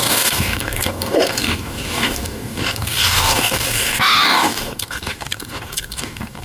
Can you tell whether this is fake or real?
fake